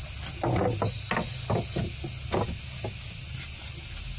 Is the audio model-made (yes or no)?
no